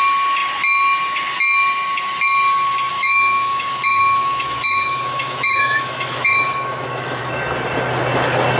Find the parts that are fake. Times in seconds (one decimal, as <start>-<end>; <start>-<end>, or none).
2.9-7.2